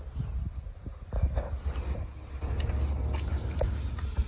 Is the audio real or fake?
real